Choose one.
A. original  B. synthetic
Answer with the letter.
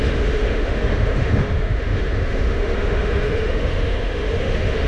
B